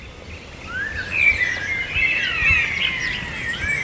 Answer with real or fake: real